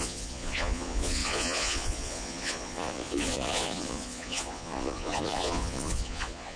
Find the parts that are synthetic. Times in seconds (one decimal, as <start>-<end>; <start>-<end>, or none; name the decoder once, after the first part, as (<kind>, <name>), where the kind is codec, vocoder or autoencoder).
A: 0.0-6.6 (vocoder, Vocos)